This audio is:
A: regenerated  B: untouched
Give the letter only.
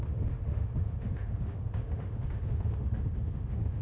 A